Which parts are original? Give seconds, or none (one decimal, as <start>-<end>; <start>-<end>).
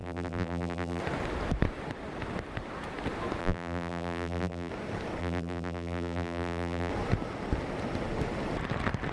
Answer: 1.0-3.4; 4.7-5.2; 6.9-9.1